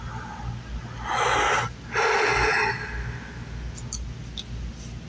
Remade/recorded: recorded